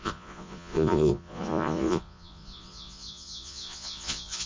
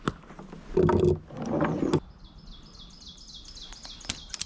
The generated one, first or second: first